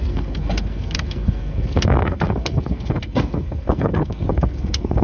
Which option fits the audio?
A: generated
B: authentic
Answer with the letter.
A